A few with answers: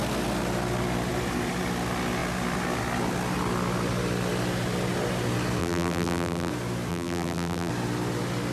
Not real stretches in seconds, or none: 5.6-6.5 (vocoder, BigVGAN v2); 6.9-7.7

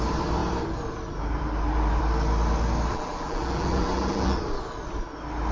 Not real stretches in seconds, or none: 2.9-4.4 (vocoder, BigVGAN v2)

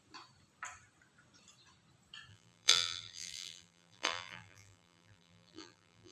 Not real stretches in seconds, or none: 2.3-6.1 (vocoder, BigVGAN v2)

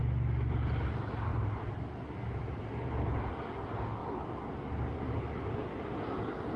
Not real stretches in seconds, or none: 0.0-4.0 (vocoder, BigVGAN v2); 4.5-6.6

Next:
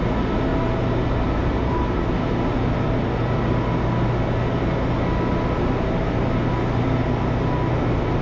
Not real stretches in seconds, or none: 0.5-2.1 (vocoder, BigVGAN v2)